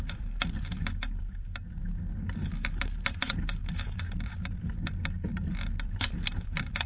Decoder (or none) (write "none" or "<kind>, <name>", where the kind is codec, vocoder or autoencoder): vocoder, BigVGAN v2